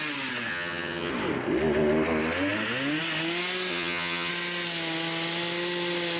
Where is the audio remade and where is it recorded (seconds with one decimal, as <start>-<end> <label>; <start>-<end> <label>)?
0.0-0.5 recorded; 0.5-1.1 remade; 1.1-3.7 recorded; 3.7-4.3 remade; 4.3-6.2 recorded